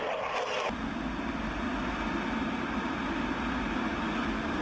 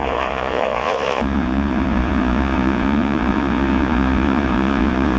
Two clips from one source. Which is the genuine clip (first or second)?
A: first